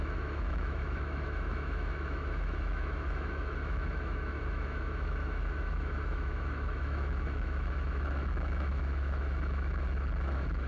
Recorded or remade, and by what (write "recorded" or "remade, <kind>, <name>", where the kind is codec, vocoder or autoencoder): remade, autoencoder, DAC-VAE